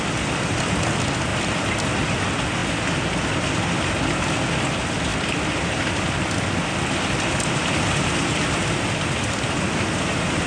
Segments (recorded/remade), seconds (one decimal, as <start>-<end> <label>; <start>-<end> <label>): 0.0-1.3 recorded; 1.3-2.1 remade; 2.1-10.5 recorded